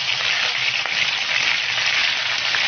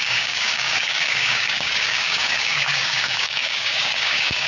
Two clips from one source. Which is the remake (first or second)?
second